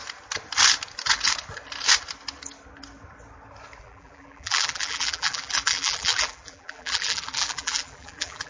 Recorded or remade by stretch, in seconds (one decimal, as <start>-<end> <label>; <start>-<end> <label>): 0.0-3.8 recorded; 3.8-8.5 remade